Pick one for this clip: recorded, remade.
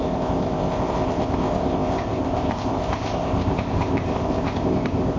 remade